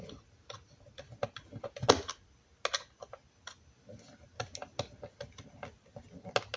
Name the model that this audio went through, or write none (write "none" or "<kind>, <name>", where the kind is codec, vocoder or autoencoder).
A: none